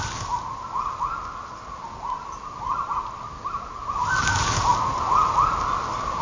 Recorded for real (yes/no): yes